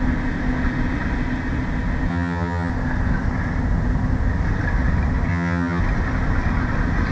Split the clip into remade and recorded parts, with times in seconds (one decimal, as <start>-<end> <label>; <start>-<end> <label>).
0.0-2.1 recorded; 2.1-2.7 remade; 2.7-5.3 recorded; 5.3-5.8 remade; 5.8-7.1 recorded